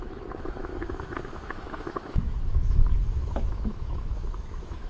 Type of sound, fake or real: fake